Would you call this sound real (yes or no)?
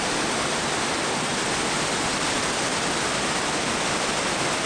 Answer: yes